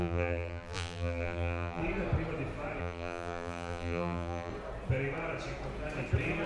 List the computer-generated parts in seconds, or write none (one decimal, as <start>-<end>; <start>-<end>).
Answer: 0.0-1.8; 2.8-4.5